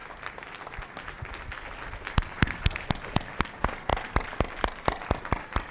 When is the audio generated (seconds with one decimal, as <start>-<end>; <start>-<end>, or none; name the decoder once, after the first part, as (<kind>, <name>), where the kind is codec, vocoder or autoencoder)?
none